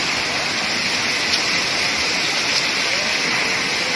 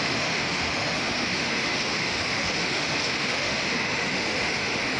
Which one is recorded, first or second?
first